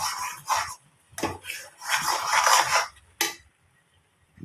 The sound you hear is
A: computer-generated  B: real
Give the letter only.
B